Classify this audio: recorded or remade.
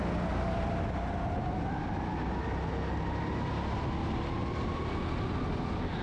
recorded